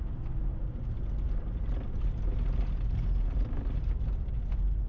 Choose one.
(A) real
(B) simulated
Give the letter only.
A